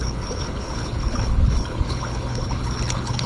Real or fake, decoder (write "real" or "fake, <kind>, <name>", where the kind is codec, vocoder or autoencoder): fake, codec, HILCodec